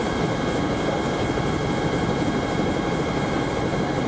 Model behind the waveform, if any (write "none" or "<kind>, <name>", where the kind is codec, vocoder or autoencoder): vocoder, BigVGAN v2